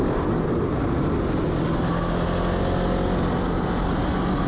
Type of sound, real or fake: real